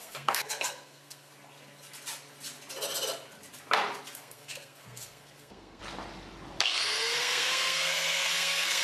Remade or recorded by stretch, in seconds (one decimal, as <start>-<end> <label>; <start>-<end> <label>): 0.0-1.3 remade; 1.3-4.2 recorded; 4.2-5.8 remade; 5.8-6.6 recorded; 6.6-8.8 remade